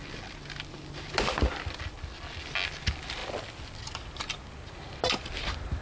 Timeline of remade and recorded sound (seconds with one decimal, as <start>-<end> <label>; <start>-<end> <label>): 0.0-5.8 recorded